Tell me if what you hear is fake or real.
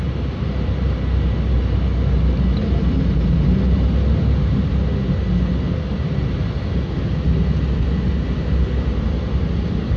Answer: real